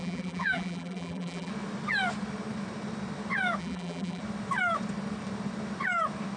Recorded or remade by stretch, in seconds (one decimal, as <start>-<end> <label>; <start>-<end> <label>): 0.0-1.5 remade; 1.5-3.6 recorded; 3.6-4.2 remade; 4.2-6.4 recorded